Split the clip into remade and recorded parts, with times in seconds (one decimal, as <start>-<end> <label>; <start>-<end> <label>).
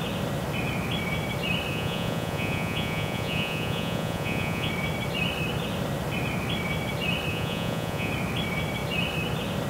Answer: 0.0-1.7 recorded; 1.7-4.7 remade; 4.7-7.3 recorded; 7.3-8.1 remade; 8.1-9.7 recorded